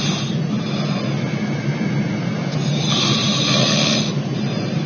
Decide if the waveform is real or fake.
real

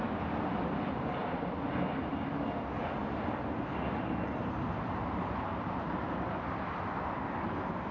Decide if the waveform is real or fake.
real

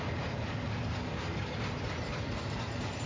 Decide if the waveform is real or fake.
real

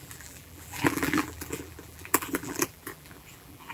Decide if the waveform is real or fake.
fake